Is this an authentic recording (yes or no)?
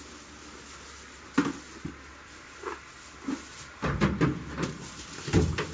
yes